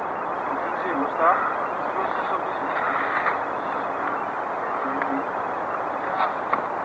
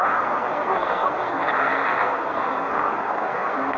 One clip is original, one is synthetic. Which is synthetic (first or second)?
second